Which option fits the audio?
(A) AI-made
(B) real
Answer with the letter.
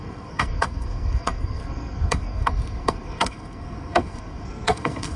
A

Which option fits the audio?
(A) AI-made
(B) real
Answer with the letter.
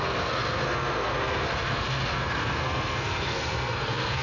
A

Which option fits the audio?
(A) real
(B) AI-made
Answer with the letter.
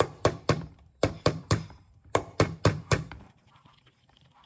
B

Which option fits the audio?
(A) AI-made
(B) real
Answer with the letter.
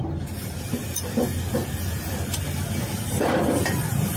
A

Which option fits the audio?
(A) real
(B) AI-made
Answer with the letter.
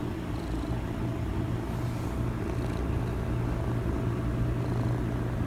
A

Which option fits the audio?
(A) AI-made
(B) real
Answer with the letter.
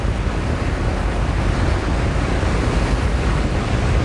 B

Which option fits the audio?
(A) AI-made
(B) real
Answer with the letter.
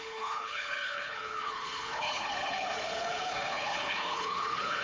A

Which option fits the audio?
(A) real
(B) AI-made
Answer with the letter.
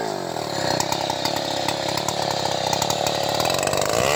A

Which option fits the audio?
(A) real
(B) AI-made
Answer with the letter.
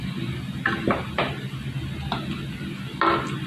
A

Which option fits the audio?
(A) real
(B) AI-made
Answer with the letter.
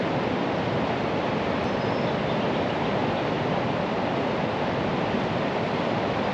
A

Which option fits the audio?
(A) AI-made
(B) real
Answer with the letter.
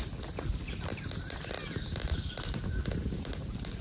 B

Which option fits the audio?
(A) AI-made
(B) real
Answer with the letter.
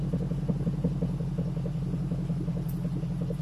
B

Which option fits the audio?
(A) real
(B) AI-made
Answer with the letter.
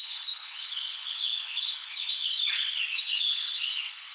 B